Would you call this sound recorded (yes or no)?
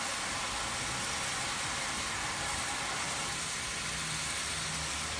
yes